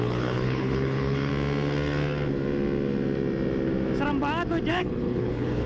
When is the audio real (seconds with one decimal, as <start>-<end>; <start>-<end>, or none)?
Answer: 1.3-4.7